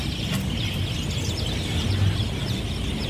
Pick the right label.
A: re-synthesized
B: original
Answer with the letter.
B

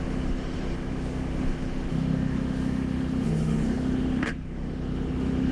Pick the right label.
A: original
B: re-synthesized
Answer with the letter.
B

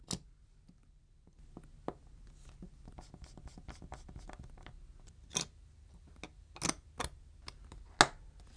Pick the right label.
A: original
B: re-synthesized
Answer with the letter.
A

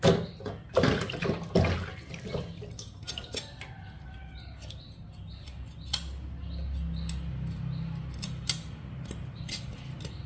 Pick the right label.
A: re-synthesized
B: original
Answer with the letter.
B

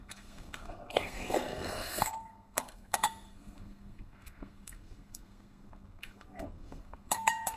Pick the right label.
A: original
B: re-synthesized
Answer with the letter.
B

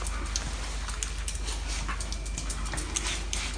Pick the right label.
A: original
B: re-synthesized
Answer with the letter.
A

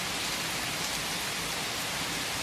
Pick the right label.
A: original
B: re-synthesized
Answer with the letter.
A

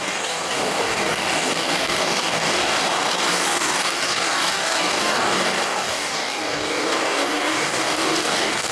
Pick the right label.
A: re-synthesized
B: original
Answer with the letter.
A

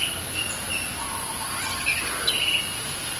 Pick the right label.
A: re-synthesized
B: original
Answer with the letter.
B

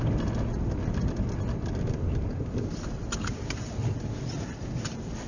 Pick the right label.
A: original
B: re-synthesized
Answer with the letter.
A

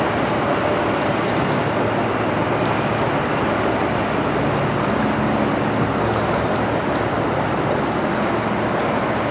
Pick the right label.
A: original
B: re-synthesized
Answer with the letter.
A